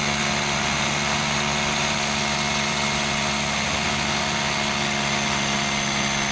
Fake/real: real